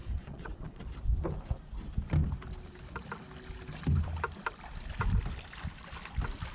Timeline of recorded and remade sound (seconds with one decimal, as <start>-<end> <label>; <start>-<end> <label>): 0.0-0.9 remade; 0.9-6.5 recorded

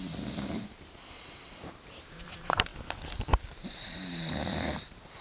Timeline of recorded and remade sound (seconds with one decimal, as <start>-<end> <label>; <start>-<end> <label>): 0.0-2.7 remade; 2.7-3.3 recorded; 3.3-5.2 remade

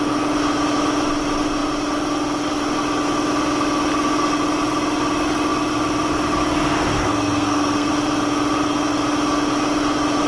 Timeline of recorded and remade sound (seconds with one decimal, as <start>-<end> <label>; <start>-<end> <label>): 0.0-7.0 recorded; 7.0-7.9 remade; 7.9-10.3 recorded

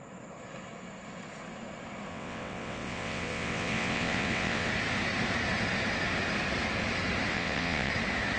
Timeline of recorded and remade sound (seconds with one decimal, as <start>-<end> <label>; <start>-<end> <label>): 0.0-2.1 recorded; 2.1-4.7 remade; 4.7-7.3 recorded; 7.3-7.9 remade; 7.9-8.4 recorded

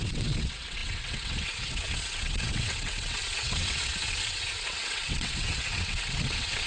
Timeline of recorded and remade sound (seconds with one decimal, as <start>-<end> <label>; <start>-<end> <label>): 0.0-6.7 remade

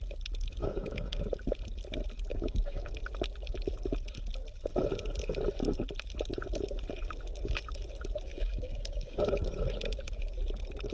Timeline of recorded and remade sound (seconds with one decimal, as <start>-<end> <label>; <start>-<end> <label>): 0.0-0.6 recorded; 0.6-1.2 remade; 1.2-2.3 recorded; 2.3-2.9 remade; 2.9-8.3 recorded; 8.3-9.2 remade; 9.2-10.9 recorded

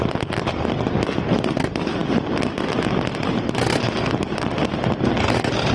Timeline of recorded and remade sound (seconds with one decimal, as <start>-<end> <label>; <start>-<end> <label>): 0.0-5.7 recorded

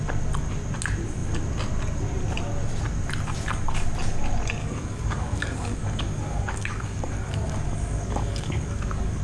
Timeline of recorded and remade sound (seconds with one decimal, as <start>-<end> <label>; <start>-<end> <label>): 0.0-4.6 recorded; 4.6-9.2 remade